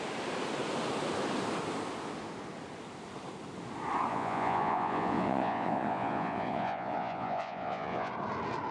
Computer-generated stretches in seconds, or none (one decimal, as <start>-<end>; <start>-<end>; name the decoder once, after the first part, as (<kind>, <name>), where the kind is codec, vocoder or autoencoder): 4.1-8.1 (vocoder, Vocos)